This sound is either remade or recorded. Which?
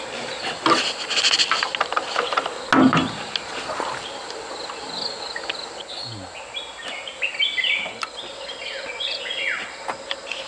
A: recorded